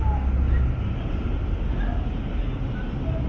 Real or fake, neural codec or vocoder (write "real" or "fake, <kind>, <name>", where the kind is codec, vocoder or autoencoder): real